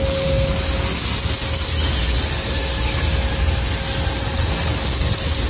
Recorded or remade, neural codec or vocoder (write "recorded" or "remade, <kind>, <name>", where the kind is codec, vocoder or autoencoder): recorded